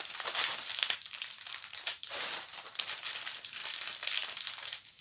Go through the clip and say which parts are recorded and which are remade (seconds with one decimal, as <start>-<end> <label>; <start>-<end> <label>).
0.0-3.6 remade; 3.6-4.5 recorded; 4.5-5.0 remade